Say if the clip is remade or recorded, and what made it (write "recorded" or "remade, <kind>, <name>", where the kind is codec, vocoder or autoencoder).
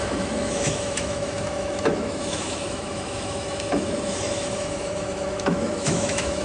remade, autoencoder, DAC-VAE